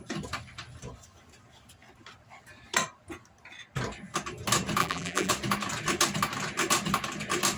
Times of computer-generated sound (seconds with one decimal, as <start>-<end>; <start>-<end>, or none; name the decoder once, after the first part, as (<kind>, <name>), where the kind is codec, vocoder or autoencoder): 4.8-5.3 (vocoder, BigVGAN v2)